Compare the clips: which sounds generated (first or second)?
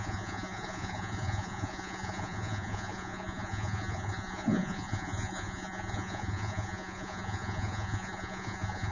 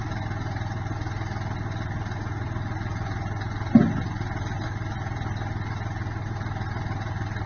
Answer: first